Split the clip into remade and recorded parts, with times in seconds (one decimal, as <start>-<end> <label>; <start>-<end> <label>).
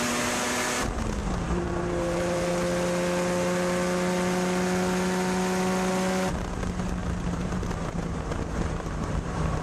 0.0-1.2 recorded; 1.2-2.5 remade; 2.5-7.0 recorded; 7.0-9.6 remade